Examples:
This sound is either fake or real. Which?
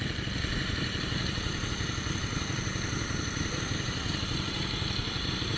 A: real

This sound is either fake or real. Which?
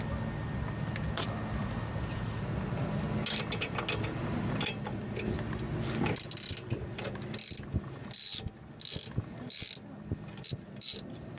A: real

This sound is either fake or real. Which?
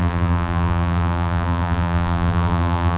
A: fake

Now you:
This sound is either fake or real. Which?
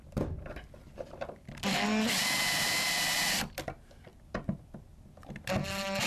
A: real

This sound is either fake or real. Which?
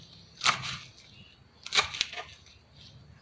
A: real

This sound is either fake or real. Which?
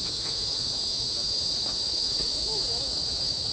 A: fake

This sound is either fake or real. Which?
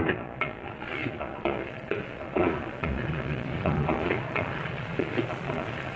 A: fake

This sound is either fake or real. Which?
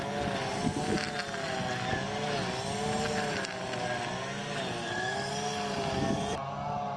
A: real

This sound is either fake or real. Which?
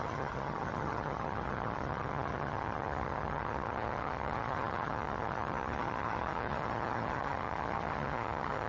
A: fake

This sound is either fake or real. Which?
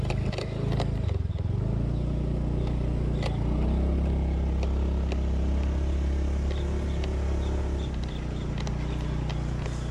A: real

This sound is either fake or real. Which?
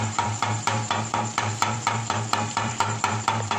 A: fake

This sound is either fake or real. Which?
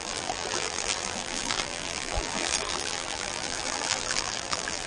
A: fake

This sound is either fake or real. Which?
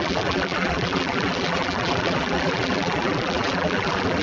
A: fake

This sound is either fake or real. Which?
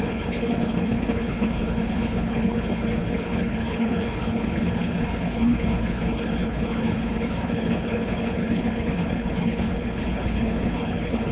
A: fake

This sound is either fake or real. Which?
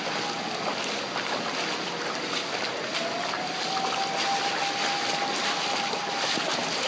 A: real